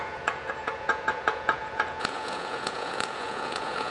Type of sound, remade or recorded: remade